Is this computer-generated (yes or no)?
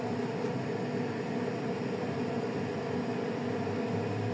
no